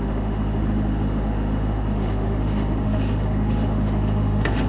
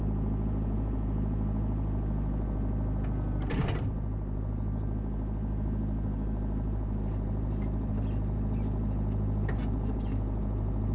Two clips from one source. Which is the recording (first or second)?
second